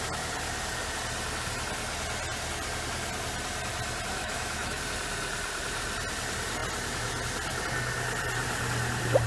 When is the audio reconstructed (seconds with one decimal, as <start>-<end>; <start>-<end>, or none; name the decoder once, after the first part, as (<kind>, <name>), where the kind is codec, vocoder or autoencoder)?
4.2-4.8 (autoencoder, DAC-VAE)